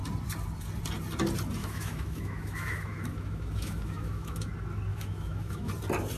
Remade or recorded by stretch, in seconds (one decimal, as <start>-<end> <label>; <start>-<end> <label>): 0.0-1.6 recorded; 1.6-4.5 remade; 4.5-4.9 recorded; 4.9-5.7 remade; 5.7-6.2 recorded